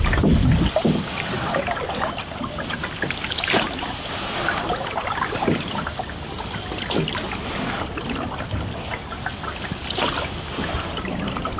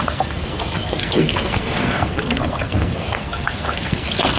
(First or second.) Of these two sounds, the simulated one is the second